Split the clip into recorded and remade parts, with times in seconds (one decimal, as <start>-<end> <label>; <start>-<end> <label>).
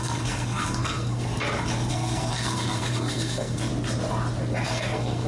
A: 0.0-1.3 remade; 1.3-1.9 recorded; 1.9-3.7 remade; 3.7-4.7 recorded; 4.7-5.3 remade